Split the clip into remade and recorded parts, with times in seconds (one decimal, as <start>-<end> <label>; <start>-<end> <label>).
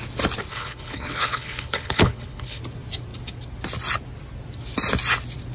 0.0-0.5 recorded; 0.5-2.6 remade; 2.6-5.5 recorded